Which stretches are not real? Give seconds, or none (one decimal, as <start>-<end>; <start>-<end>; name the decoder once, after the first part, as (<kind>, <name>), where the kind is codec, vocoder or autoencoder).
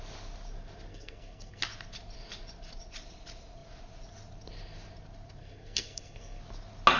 0.9-1.6 (codec, SNAC); 5.4-6.4